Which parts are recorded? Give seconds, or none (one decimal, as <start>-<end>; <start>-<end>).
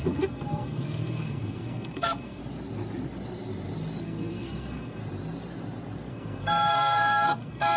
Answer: 2.4-4.0; 5.0-6.1